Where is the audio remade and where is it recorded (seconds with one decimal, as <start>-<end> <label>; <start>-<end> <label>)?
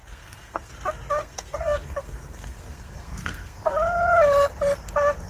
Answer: 0.0-0.7 remade; 0.7-1.2 recorded; 1.2-3.7 remade; 3.7-5.3 recorded